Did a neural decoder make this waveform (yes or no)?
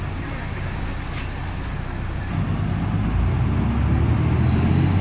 no